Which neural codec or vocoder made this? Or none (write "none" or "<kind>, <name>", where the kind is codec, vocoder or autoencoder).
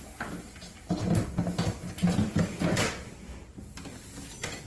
none